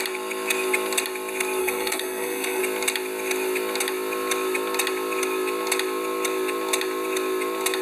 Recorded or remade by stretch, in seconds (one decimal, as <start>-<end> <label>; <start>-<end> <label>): 0.0-1.6 recorded; 1.6-2.6 remade; 2.6-7.8 recorded